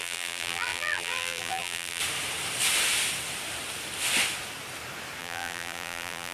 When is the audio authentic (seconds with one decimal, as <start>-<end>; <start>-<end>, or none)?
2.0-5.2